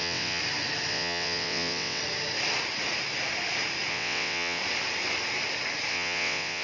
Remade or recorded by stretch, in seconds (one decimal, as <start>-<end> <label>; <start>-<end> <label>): 0.0-0.4 remade; 0.4-0.9 recorded; 0.9-2.0 remade; 2.0-3.9 recorded; 3.9-4.6 remade; 4.6-5.9 recorded; 5.9-6.6 remade